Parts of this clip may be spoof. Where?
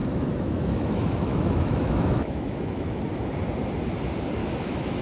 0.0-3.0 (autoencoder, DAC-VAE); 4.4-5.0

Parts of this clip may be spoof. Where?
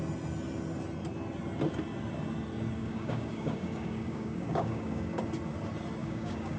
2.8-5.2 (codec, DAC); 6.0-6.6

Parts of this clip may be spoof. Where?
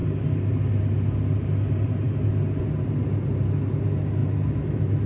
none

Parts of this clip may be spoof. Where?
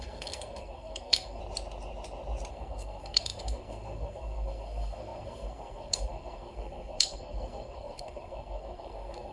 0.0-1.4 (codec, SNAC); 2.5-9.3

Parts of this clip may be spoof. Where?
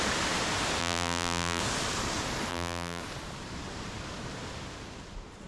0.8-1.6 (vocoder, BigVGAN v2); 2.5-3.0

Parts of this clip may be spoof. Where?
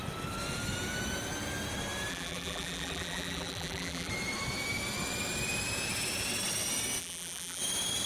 2.1-4.1 (vocoder, BigVGAN v2); 7.0-7.6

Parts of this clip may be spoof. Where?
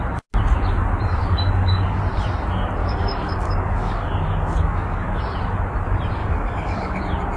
1.2-2.0 (codec, DAC); 2.8-5.2; 6.2-7.0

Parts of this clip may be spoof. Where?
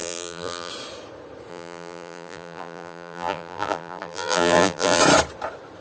0.0-0.7 (vocoder, BigVGAN v2); 1.5-5.0